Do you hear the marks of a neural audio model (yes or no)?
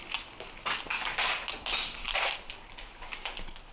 no